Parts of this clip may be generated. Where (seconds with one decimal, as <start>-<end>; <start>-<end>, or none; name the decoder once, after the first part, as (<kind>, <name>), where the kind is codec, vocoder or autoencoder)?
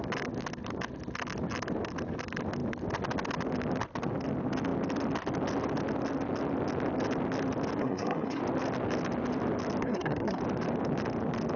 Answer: 7.8-8.4 (codec, SNAC); 9.8-10.4